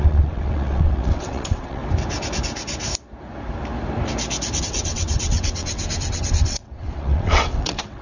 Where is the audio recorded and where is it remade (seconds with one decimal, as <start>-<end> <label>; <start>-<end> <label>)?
0.0-1.8 remade; 1.8-4.6 recorded; 4.6-8.0 remade